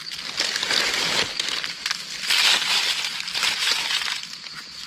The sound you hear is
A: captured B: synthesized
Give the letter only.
A